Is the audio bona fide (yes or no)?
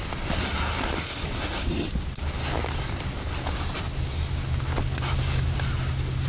yes